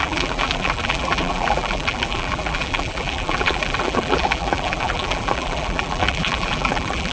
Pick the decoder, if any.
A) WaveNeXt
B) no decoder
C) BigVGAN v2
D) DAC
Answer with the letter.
C